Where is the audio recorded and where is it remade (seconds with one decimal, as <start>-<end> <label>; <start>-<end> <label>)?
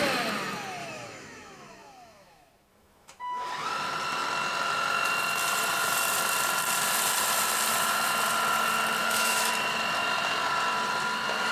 0.0-0.8 recorded; 0.8-3.5 remade; 3.5-9.0 recorded; 9.0-9.5 remade; 9.5-11.5 recorded